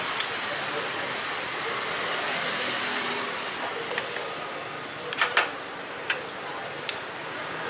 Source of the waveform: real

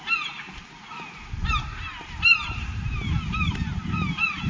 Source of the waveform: real